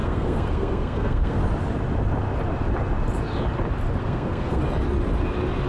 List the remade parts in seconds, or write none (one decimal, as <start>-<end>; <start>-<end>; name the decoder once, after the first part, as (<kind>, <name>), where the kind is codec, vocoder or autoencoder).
0.0-1.4 (codec, SNAC); 4.0-4.6